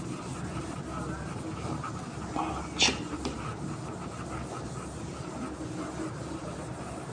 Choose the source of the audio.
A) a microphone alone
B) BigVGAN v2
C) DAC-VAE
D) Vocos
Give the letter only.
A